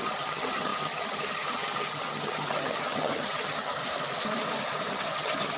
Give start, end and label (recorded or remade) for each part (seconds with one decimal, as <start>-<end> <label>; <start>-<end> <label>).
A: 0.0-3.8 remade; 3.8-4.9 recorded; 4.9-5.6 remade